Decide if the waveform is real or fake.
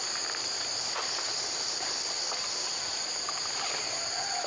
fake